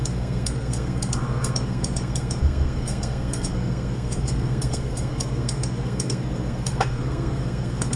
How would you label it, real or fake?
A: fake